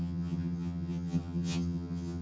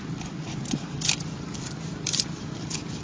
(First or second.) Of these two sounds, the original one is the second